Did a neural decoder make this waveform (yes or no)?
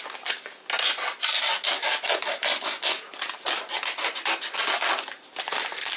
no